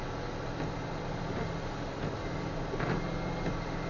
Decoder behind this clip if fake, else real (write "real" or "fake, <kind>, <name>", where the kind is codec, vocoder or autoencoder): real